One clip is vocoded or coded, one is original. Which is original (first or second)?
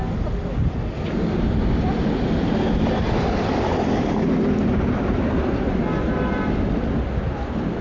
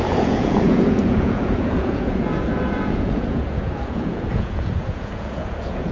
first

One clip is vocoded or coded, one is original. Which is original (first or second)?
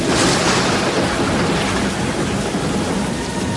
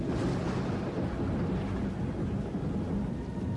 second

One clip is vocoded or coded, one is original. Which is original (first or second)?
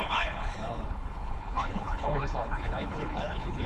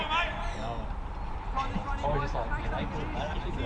second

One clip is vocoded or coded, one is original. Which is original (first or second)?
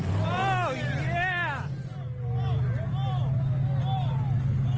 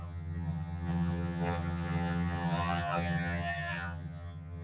first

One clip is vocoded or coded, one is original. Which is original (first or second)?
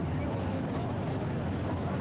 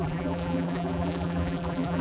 first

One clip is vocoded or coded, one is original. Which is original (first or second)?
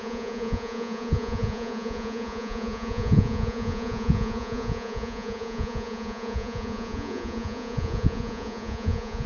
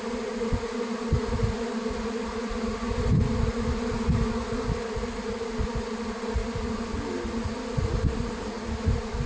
second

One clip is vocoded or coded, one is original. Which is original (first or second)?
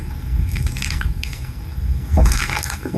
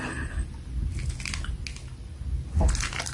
second